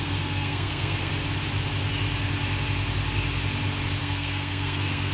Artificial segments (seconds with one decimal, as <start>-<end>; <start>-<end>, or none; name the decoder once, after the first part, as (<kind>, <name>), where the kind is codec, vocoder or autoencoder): 0.0-1.1 (codec, SNAC); 4.0-5.1